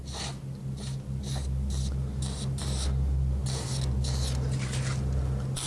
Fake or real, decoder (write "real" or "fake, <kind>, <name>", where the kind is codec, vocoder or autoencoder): real